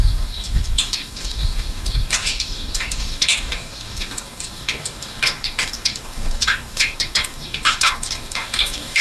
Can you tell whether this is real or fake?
fake